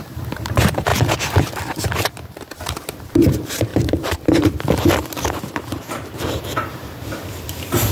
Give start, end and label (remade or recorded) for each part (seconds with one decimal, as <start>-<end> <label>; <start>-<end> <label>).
0.0-0.9 remade; 0.9-3.1 recorded; 3.1-7.9 remade